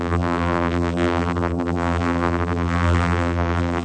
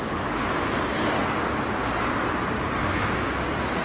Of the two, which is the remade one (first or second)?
first